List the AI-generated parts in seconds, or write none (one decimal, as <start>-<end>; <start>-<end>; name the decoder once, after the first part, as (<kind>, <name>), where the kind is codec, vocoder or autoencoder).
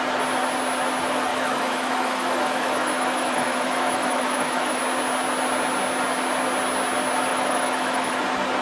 1.3-4.8 (autoencoder, DAC-VAE); 7.3-8.1